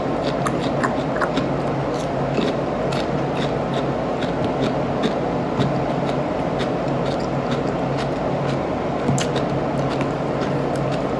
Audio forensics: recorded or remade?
recorded